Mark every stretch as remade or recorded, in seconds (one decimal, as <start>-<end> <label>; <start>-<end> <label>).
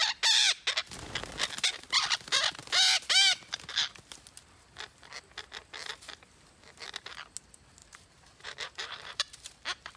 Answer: 0.0-7.8 recorded; 7.8-10.0 remade